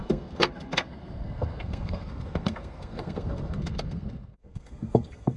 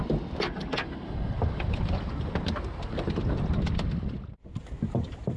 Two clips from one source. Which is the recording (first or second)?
second